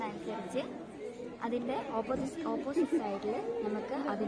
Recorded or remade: recorded